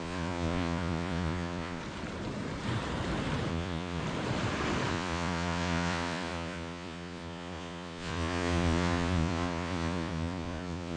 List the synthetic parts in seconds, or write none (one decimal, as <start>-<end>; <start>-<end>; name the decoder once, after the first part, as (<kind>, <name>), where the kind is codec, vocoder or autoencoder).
0.0-1.8 (vocoder, Vocos); 3.5-4.0; 4.9-11.0

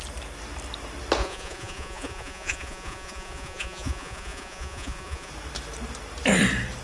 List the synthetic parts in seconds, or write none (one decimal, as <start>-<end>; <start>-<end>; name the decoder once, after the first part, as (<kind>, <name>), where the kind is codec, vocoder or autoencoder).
1.2-5.3 (vocoder, Vocos)

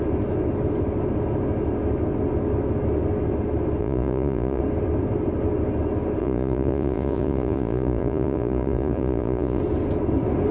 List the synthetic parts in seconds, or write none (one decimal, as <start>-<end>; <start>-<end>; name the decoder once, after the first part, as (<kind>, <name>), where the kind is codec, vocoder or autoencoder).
3.8-4.6 (vocoder, Vocos); 6.2-9.6

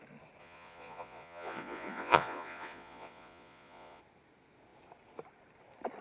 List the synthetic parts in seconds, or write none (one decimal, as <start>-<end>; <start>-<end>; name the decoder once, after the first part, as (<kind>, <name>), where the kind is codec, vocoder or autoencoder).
0.4-4.0 (vocoder, Vocos)